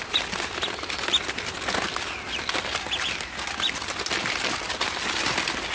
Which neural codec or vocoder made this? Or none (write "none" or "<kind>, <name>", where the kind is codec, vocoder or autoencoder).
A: none